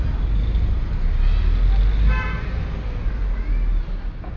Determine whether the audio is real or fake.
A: real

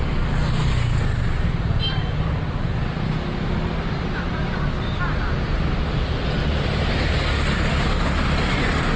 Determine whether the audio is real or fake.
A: real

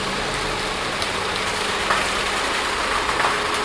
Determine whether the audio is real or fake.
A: real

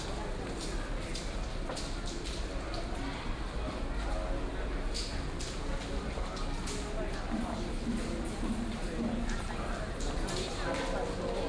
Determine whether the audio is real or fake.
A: real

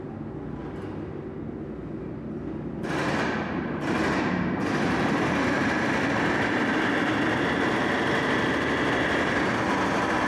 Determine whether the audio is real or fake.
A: real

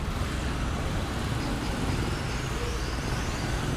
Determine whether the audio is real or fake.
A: real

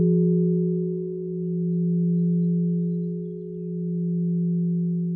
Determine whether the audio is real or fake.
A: real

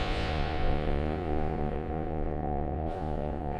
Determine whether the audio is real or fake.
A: fake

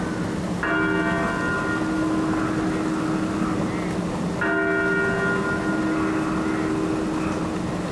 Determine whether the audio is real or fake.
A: real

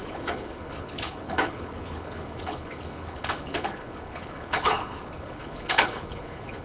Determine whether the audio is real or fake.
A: fake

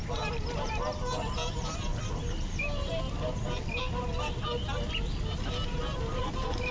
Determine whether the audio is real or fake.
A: real